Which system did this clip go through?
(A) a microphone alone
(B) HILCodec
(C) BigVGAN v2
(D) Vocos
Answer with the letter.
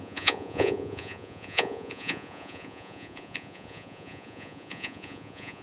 D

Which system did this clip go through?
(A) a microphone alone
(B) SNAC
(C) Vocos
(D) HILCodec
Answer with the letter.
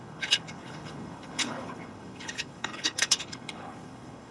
D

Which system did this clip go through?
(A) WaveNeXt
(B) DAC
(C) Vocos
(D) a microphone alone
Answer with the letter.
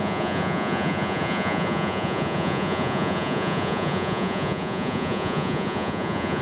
C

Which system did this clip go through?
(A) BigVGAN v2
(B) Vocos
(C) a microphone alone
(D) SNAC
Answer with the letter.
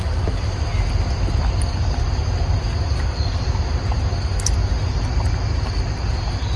C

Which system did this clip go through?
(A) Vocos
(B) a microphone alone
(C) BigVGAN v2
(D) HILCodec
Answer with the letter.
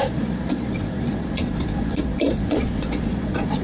A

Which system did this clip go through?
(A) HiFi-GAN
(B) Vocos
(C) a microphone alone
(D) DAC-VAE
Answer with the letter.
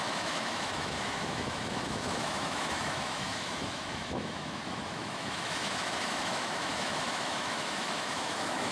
D